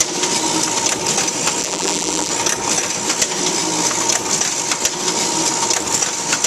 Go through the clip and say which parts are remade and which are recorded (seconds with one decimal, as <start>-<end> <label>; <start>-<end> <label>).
0.0-1.6 recorded; 1.6-2.3 remade; 2.3-6.5 recorded